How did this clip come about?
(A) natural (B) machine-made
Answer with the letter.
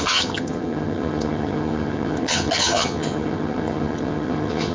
B